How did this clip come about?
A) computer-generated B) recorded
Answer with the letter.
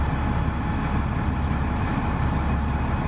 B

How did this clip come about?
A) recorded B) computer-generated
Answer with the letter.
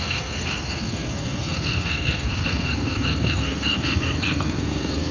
B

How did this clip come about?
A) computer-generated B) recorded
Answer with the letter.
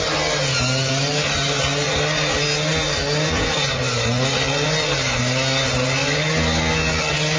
B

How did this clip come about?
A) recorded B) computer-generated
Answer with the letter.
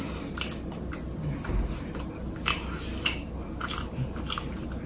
A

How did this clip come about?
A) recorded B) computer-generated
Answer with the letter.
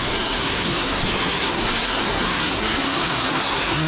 B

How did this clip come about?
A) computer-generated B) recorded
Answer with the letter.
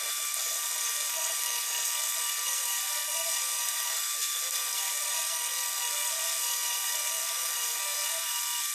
A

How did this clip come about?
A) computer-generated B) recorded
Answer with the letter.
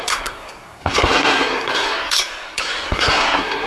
A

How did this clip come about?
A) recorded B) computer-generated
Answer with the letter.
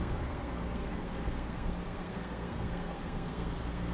B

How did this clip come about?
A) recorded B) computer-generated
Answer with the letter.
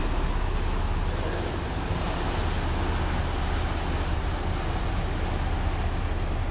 A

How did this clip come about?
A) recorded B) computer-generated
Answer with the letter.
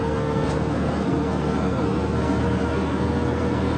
B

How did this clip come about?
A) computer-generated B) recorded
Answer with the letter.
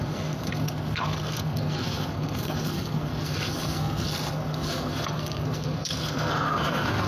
A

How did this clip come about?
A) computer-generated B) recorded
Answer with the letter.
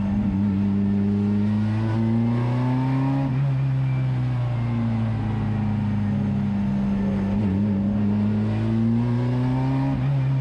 B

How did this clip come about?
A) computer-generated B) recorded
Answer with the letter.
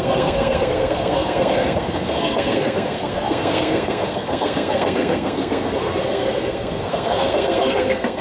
A